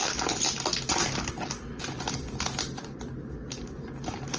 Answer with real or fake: real